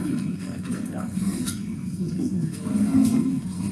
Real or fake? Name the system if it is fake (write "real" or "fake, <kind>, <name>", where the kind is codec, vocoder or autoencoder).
fake, codec, SNAC